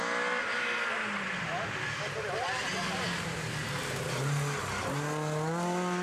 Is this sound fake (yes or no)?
no